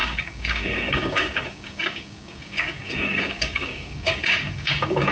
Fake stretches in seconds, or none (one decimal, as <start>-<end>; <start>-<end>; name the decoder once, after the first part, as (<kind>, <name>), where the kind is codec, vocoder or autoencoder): 0.0-5.1 (codec, DAC)